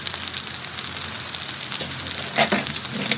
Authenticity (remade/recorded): recorded